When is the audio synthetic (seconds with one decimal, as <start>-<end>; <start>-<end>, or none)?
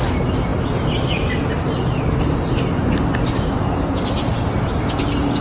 none